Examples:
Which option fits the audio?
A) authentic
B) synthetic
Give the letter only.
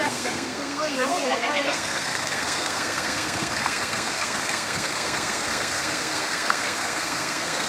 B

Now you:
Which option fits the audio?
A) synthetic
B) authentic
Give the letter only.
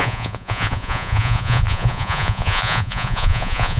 A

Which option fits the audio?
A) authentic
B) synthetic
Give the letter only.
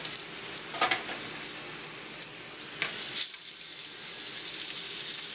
A